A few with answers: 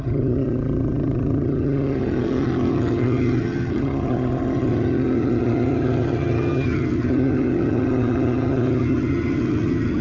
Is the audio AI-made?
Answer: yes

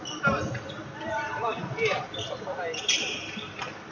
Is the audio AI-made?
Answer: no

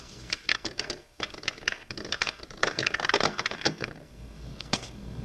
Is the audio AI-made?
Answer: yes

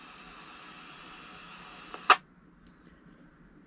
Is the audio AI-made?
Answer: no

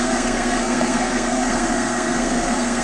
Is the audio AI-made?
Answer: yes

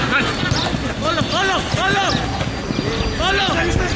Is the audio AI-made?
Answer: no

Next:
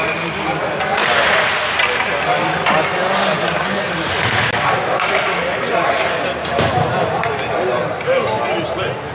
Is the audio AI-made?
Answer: no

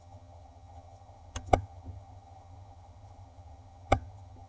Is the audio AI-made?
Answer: yes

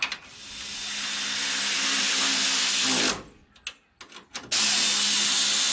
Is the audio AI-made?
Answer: no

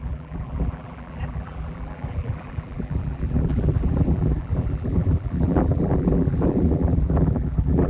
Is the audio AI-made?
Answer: yes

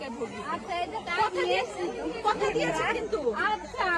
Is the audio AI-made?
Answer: yes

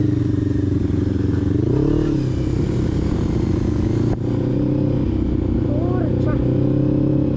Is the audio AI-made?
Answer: no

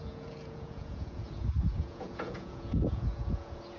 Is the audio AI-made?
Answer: yes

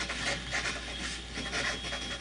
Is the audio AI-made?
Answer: no